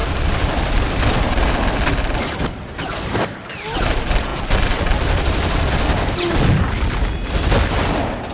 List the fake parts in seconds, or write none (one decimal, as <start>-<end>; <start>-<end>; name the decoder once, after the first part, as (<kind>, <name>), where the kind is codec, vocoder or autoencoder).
none